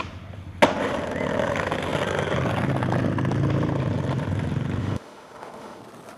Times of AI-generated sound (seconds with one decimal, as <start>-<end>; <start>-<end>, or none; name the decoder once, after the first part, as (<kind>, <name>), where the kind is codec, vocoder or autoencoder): 4.8-5.8 (autoencoder, DAC-VAE)

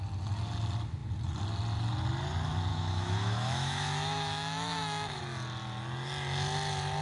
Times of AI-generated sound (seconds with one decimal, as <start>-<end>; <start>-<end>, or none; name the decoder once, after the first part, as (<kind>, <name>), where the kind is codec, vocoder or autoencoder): 2.7-5.2 (autoencoder, DAC-VAE)

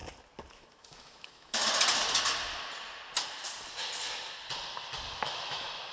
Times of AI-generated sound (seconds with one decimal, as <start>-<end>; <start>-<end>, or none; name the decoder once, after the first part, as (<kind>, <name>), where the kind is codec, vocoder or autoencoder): 0.5-1.6 (autoencoder, DAC-VAE); 5.1-5.9

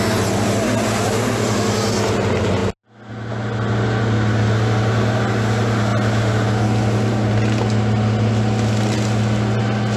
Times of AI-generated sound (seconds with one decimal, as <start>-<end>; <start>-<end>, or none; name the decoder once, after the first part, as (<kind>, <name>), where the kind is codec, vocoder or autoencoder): none

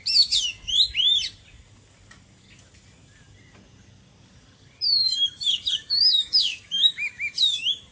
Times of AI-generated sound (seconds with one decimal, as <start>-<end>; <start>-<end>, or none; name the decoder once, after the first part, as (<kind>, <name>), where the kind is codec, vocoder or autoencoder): 5.0-7.9 (autoencoder, DAC-VAE)

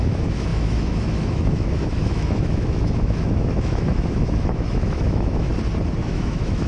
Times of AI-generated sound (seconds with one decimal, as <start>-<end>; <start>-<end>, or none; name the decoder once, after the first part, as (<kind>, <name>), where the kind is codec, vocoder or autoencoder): 0.0-5.5 (autoencoder, DAC-VAE); 6.0-6.7

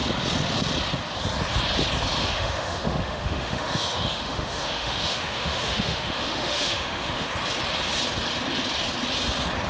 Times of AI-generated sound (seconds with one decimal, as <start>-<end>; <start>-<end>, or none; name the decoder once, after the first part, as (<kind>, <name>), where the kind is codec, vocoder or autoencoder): 2.2-7.3 (autoencoder, DAC-VAE)

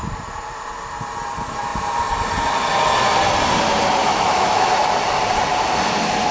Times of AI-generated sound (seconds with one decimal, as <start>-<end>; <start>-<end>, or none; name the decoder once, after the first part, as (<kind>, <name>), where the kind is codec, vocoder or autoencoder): 4.0-4.7 (autoencoder, DAC-VAE)